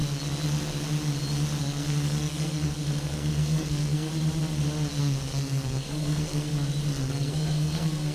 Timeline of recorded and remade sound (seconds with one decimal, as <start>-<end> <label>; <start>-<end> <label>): 0.0-1.6 recorded; 1.6-4.1 remade; 4.1-5.0 recorded; 5.0-6.5 remade; 6.5-7.1 recorded; 7.1-8.1 remade